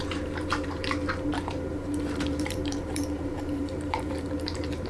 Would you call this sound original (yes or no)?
no